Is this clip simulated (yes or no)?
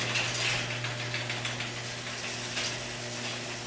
no